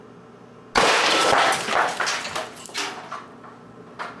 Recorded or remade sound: recorded